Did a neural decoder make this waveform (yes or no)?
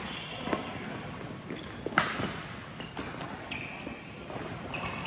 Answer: no